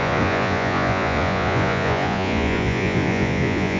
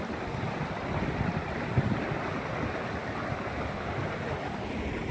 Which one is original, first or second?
second